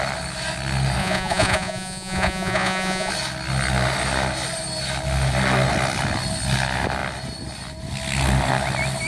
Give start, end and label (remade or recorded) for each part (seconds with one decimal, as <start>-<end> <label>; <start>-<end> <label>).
0.0-1.0 recorded; 1.0-3.1 remade; 3.1-9.1 recorded